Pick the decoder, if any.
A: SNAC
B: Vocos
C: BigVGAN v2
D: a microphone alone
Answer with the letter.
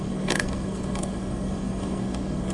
A